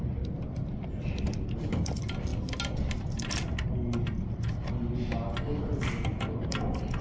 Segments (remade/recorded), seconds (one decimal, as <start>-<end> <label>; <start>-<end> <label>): 0.0-7.0 recorded